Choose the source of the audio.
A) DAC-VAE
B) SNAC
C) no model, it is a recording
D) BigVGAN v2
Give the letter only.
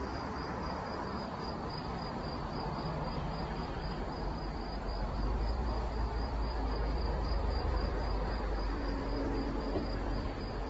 D